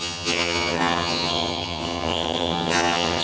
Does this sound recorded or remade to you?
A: remade